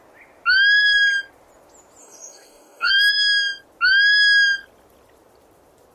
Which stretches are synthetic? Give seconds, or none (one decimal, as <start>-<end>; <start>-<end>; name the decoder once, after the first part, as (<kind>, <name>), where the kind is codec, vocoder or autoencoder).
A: 2.0-2.9 (codec, DAC)